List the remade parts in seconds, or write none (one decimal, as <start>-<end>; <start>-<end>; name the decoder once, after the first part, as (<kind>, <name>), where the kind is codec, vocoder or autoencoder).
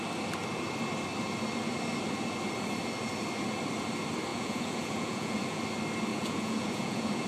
4.3-5.6 (vocoder, Vocos); 6.1-7.3